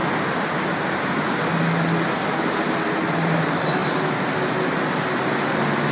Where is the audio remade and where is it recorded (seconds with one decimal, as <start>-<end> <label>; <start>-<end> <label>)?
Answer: 0.0-5.9 recorded